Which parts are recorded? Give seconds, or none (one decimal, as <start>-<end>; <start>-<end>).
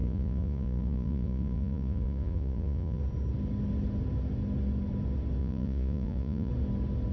3.0-5.4; 6.5-7.1